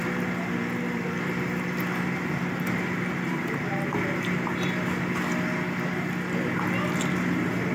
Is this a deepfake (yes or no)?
no